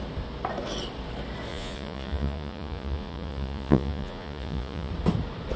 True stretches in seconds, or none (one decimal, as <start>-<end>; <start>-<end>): 0.0-1.5; 4.9-5.6